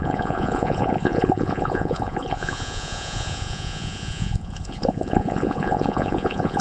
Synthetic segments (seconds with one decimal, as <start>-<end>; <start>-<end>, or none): 0.0-6.6